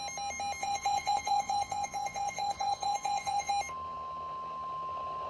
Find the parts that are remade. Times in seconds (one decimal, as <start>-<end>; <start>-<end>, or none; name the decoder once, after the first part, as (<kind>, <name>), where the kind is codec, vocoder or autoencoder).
0.6-3.5 (vocoder, Vocos)